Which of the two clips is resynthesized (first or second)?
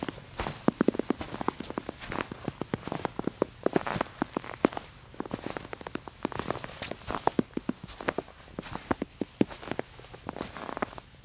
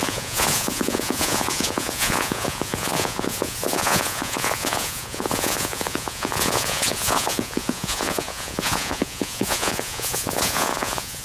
second